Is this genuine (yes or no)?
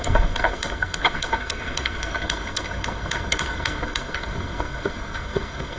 no